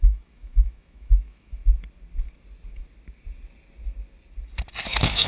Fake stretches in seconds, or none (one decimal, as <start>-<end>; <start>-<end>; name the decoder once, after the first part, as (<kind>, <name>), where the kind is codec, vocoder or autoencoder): 0.0-1.6 (autoencoder, DAC-VAE); 4.8-5.3